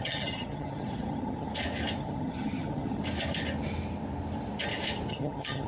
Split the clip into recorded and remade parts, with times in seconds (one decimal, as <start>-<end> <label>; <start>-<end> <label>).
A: 0.0-1.5 remade; 1.5-2.0 recorded; 2.0-3.0 remade; 3.0-5.1 recorded; 5.1-5.7 remade